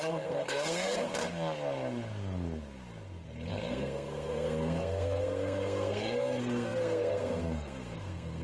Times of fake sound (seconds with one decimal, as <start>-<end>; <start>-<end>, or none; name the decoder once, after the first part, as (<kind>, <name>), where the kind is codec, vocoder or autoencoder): 0.0-1.1 (codec, SNAC); 3.5-8.4